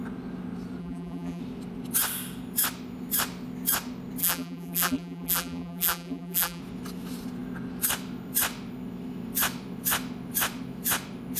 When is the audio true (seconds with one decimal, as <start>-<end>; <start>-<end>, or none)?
0.0-0.8; 1.4-4.2; 6.6-11.4

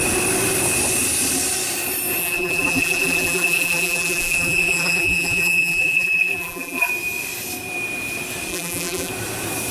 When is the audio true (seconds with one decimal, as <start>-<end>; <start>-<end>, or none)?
0.0-2.2; 6.9-8.5; 9.1-9.7

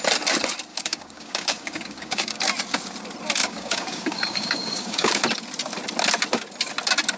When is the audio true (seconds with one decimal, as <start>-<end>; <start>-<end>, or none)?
0.0-0.7; 2.4-3.4; 5.2-7.2